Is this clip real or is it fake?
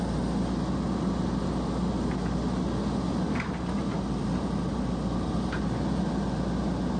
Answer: real